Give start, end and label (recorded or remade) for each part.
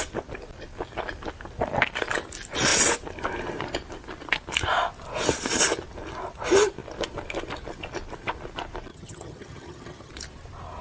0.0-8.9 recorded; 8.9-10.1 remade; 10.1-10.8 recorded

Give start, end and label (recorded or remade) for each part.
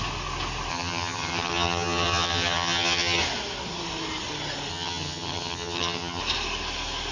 0.0-0.7 recorded; 0.7-3.2 remade; 3.2-4.7 recorded; 4.7-6.2 remade; 6.2-7.1 recorded